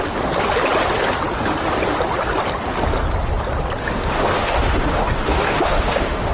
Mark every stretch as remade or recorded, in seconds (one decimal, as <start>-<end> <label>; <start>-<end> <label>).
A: 0.0-3.8 recorded; 3.8-6.3 remade